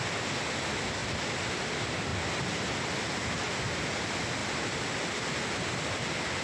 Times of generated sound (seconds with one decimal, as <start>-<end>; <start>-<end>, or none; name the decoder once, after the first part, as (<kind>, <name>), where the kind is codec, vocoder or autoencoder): none